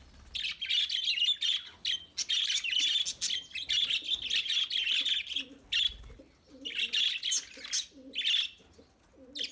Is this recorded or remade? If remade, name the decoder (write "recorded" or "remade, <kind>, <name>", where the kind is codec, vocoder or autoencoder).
recorded